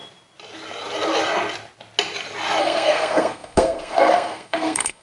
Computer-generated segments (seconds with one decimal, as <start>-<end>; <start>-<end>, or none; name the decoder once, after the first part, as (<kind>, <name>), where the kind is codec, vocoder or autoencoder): 2.6-5.0 (codec, SNAC)